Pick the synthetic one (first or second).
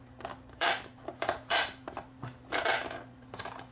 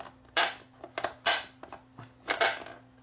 first